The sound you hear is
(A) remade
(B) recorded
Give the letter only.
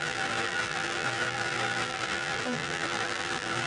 A